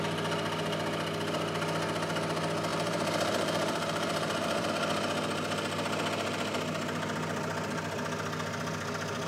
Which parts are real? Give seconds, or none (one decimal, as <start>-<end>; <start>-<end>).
0.0-2.7; 4.7-9.3